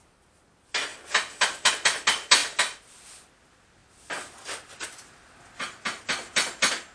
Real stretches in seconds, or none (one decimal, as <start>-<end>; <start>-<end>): 0.0-2.4; 3.3-3.8; 5.4-6.9